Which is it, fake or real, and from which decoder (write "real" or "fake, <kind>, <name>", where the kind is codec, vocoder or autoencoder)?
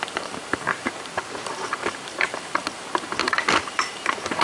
fake, vocoder, BigVGAN v2